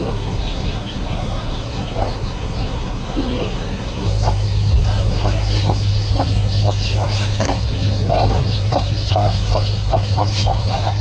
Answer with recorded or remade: remade